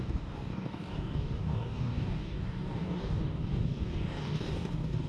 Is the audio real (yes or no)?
no